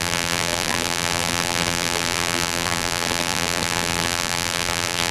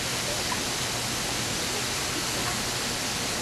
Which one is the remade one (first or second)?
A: first